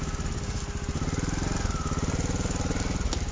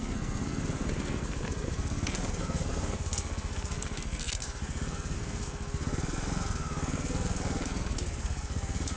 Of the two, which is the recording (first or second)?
first